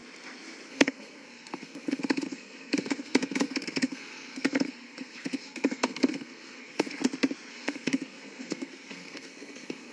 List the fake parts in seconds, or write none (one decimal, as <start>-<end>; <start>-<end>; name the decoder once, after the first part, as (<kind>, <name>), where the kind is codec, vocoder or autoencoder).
0.7-7.0 (codec, SNAC); 7.5-9.9